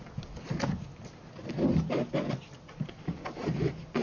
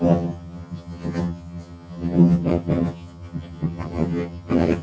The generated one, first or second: second